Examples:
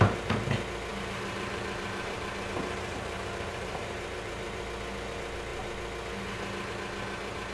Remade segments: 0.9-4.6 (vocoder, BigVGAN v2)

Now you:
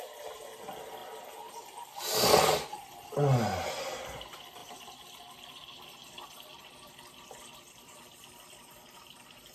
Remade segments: 4.6-5.2 (vocoder, BigVGAN v2)

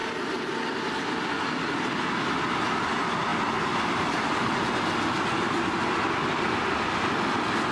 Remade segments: none